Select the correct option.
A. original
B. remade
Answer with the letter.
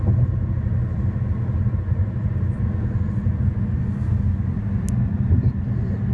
A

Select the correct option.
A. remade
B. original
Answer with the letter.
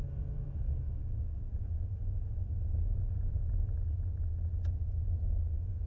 A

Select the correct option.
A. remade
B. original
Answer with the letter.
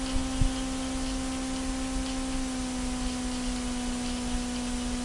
B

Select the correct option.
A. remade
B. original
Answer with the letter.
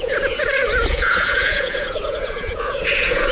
A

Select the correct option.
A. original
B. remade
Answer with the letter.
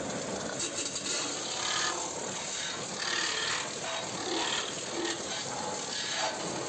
A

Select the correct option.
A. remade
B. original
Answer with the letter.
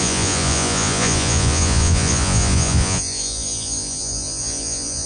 A